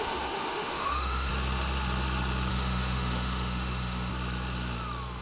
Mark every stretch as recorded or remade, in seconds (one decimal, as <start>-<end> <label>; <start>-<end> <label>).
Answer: 0.0-1.3 remade; 1.3-2.5 recorded; 2.5-4.1 remade; 4.1-5.2 recorded